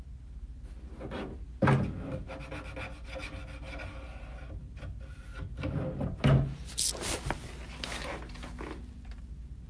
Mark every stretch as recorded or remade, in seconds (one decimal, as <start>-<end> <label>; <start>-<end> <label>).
0.0-9.7 recorded